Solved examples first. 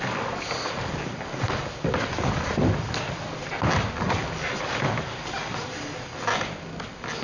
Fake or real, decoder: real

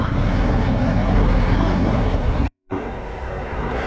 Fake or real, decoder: fake, codec, SNAC